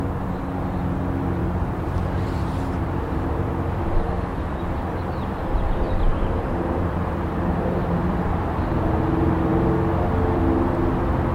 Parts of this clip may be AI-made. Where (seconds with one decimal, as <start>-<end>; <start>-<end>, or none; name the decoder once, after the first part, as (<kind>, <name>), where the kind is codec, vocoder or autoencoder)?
1.4-3.5 (vocoder, BigVGAN v2); 6.1-8.7